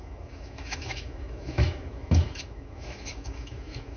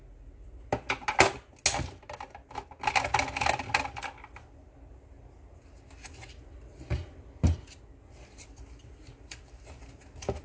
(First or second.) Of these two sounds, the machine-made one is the first